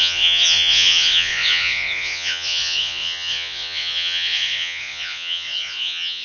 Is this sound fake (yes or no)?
yes